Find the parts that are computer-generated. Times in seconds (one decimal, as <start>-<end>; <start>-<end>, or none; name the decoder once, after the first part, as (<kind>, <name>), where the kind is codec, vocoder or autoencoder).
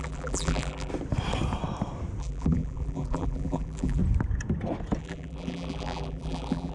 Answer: 0.0-0.9 (vocoder, BigVGAN v2); 2.2-4.0; 5.0-6.7